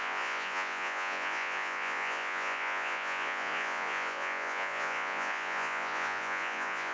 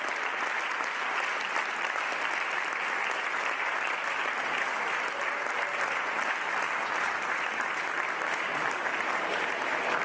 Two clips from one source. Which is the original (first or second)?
second